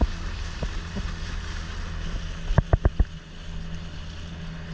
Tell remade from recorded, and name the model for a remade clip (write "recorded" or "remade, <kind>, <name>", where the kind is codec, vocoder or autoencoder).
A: recorded